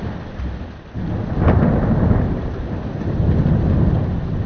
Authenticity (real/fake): real